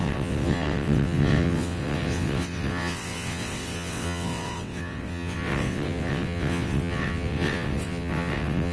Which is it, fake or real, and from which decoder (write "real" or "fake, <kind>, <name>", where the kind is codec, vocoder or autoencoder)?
fake, vocoder, WaveNeXt